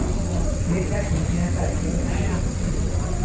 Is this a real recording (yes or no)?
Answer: no